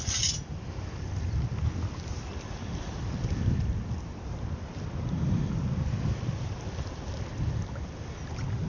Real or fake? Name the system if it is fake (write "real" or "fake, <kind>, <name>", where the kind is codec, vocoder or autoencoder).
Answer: real